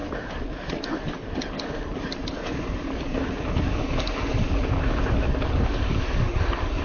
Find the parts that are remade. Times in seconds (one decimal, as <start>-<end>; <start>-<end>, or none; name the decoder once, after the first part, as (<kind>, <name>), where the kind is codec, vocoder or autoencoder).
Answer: none

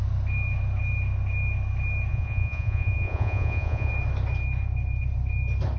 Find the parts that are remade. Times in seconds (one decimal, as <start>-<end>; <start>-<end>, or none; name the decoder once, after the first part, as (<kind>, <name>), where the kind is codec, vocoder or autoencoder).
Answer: 2.1-3.9 (vocoder, Vocos)